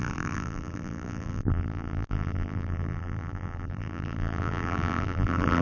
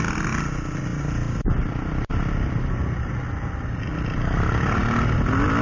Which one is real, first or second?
second